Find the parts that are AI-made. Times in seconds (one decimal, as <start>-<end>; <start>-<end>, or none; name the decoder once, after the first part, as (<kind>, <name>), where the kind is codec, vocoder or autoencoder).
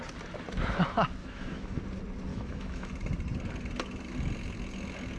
1.2-1.8 (autoencoder, DAC-VAE); 2.3-2.9